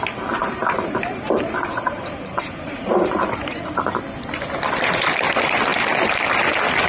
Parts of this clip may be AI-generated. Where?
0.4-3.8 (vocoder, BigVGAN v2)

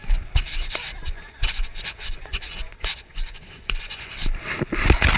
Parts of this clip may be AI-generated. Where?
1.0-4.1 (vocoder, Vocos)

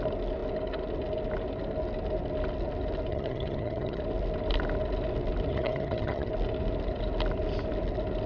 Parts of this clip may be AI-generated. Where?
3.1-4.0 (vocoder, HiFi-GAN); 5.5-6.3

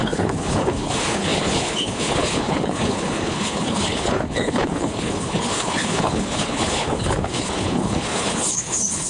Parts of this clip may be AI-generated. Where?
0.0-9.1 (codec, HILCodec)